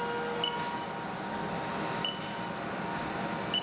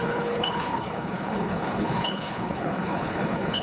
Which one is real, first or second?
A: first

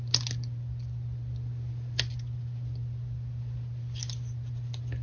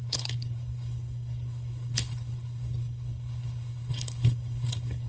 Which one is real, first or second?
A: first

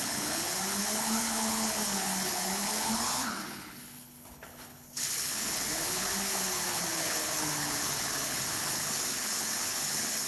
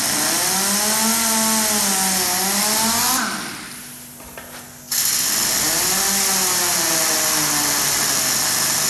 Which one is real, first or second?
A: second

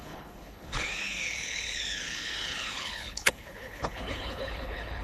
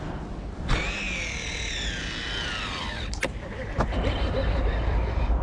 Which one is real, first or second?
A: second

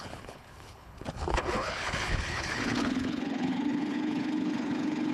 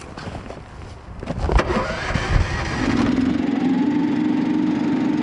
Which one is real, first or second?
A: second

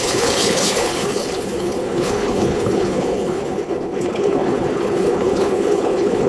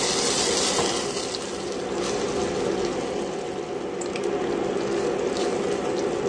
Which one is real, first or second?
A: second